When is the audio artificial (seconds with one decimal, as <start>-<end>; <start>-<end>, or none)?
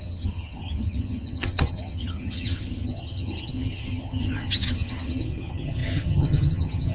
0.0-6.9